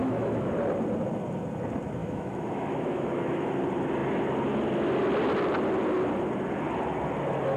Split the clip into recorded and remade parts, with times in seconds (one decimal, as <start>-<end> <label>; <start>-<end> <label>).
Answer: 0.0-0.5 remade; 0.5-2.0 recorded; 2.0-3.5 remade; 3.5-7.6 recorded